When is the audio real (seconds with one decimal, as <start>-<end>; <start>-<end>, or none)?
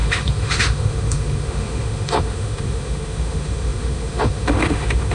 none